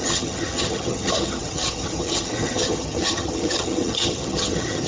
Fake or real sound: fake